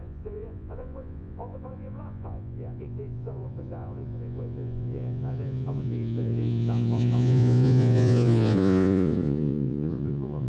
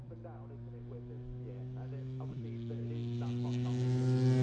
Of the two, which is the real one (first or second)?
second